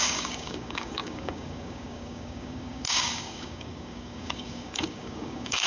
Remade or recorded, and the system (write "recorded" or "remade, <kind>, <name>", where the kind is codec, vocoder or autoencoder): remade, codec, DAC